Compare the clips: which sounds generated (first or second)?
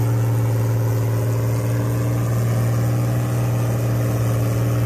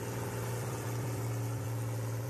second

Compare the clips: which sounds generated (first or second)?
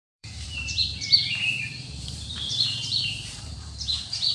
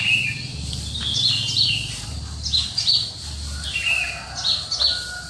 first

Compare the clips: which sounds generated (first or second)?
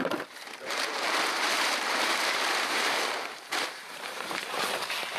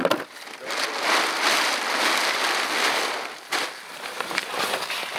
first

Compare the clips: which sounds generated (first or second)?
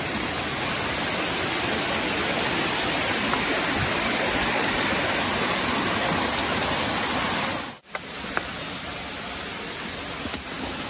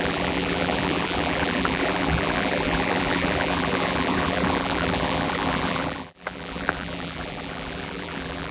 second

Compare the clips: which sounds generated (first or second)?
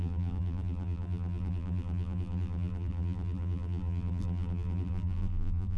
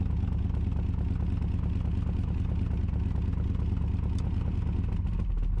first